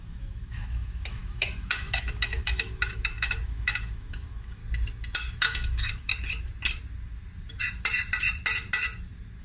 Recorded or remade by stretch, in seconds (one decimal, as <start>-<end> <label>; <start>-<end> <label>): 0.0-4.6 remade; 4.6-5.3 recorded; 5.3-6.1 remade; 6.1-9.4 recorded